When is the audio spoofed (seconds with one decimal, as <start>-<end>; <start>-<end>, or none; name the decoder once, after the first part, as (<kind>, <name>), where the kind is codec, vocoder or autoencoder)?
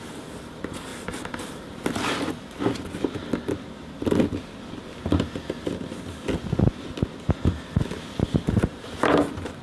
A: none